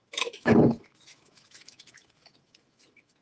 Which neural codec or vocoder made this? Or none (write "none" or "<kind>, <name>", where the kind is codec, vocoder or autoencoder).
autoencoder, DAC-VAE